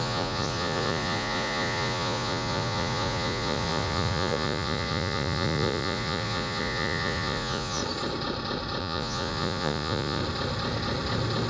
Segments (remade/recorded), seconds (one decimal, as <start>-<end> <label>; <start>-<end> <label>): 0.0-7.8 remade; 7.8-8.8 recorded; 8.8-10.2 remade; 10.2-11.5 recorded

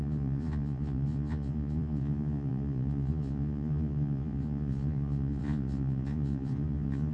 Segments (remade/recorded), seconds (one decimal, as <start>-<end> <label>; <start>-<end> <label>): 0.0-7.1 remade